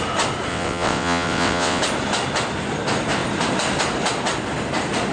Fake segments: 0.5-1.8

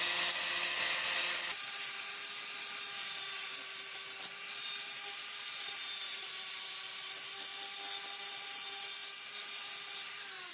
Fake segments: none

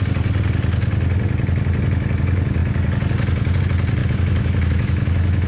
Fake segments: 4.0-5.5

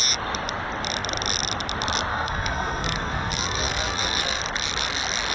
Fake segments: 2.1-4.4

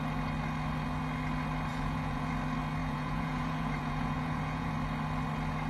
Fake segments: 1.7-2.3; 2.8-4.7

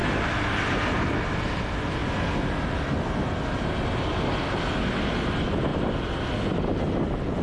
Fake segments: none

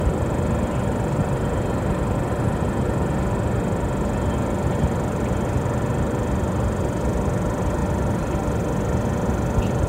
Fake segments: none